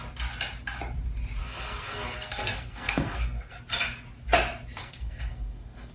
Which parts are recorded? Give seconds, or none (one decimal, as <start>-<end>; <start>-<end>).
0.0-1.4; 3.6-4.8